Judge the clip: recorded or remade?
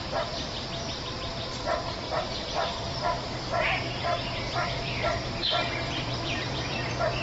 remade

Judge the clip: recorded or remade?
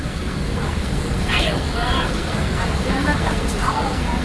remade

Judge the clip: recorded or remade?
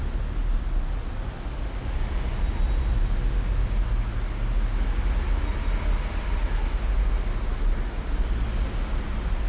recorded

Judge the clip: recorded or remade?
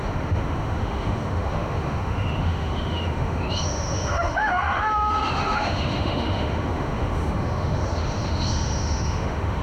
remade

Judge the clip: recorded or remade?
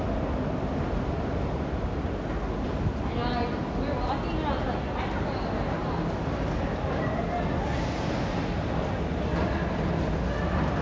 recorded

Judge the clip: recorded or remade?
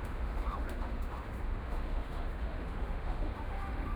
remade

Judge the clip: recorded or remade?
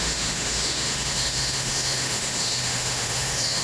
remade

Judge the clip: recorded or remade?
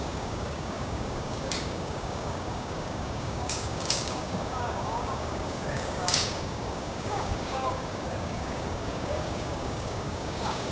remade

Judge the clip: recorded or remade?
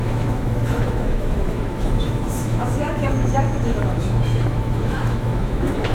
remade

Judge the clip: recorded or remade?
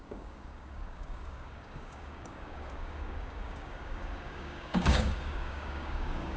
remade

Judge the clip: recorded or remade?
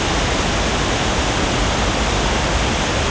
recorded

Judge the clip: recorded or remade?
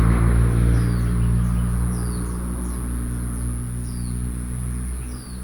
recorded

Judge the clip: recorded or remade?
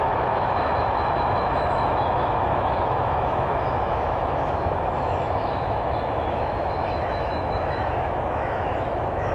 remade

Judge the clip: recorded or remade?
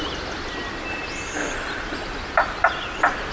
recorded